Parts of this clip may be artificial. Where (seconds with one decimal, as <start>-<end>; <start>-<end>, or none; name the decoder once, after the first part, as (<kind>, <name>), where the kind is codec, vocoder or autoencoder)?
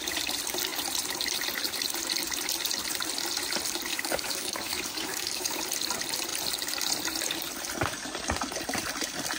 3.9-5.6 (codec, DAC)